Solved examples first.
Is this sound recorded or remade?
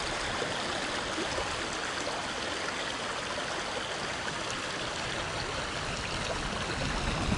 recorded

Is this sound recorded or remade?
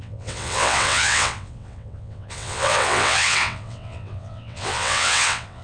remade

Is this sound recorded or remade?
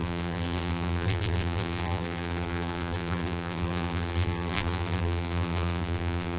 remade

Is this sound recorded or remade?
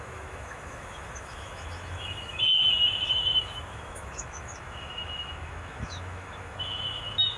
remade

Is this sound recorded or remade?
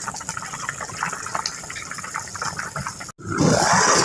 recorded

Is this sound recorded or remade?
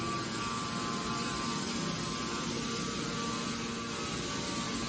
recorded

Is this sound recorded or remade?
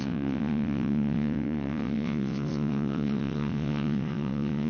remade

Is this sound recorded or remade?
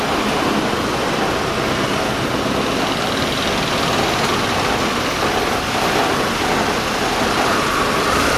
recorded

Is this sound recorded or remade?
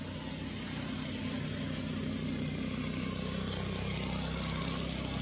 recorded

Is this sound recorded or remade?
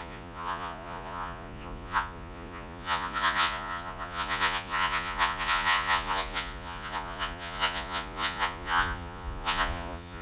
remade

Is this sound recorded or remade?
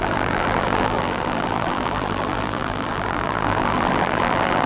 remade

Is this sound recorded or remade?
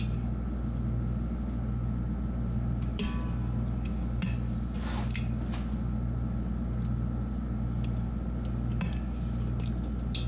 recorded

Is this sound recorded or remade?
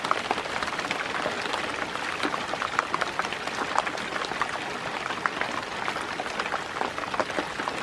recorded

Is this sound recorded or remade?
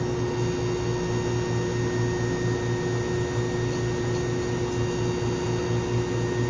recorded